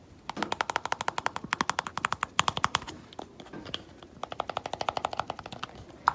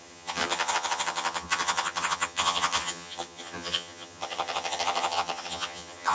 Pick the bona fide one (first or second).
first